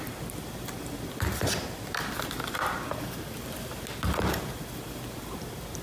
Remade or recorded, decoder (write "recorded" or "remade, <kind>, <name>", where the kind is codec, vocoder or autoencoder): recorded